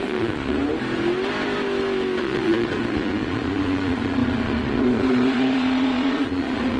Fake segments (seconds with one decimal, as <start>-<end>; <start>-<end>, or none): 0.0-0.6; 2.2-6.8